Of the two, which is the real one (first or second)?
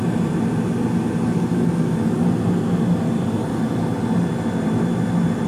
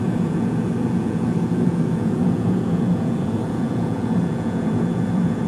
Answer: first